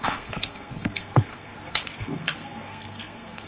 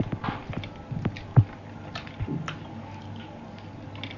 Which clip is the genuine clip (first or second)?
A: second